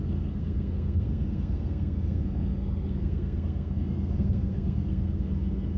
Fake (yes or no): yes